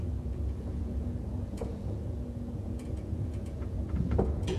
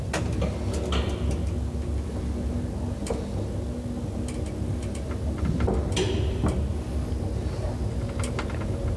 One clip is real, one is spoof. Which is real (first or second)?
second